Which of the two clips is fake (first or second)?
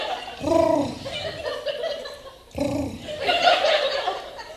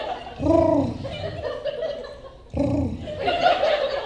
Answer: first